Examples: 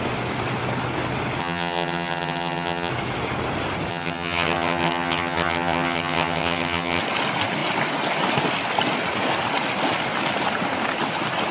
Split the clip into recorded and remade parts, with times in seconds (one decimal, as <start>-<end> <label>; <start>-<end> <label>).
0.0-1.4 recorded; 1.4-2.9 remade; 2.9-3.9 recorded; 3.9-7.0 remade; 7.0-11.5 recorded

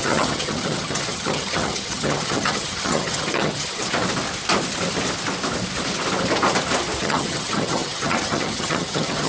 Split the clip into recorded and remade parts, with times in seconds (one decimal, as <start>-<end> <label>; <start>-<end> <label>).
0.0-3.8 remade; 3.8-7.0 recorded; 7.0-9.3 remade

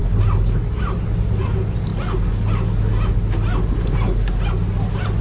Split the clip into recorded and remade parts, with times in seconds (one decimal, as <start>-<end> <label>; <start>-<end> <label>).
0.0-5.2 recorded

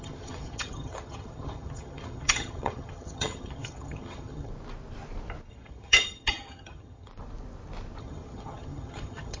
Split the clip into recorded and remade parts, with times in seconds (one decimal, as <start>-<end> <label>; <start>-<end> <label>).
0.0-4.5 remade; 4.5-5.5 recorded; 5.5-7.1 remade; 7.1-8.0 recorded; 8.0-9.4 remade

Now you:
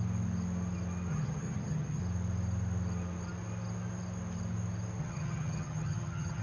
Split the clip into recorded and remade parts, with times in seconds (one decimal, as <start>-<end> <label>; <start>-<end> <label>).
0.0-1.1 recorded; 1.1-2.0 remade; 2.0-5.0 recorded; 5.0-6.4 remade

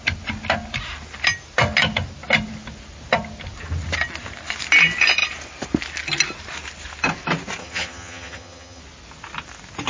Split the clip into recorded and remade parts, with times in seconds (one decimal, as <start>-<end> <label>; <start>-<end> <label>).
0.0-7.6 recorded; 7.6-8.8 remade; 8.8-9.9 recorded